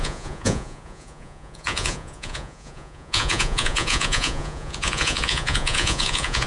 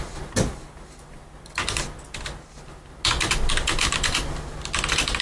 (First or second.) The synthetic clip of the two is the first